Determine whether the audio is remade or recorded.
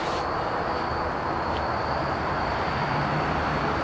remade